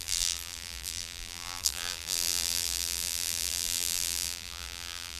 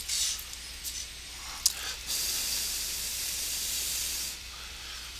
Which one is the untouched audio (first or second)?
second